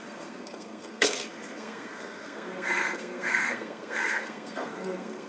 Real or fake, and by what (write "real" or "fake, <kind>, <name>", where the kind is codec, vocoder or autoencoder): fake, codec, SNAC